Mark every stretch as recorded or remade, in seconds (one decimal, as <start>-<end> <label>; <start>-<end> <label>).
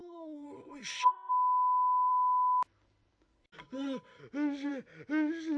0.0-1.3 remade; 1.3-3.6 recorded; 3.6-4.2 remade; 4.2-5.6 recorded